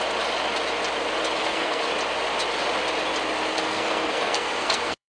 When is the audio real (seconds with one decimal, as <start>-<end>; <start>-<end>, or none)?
0.0-1.4; 1.9-3.5